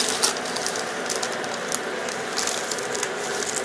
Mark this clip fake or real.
real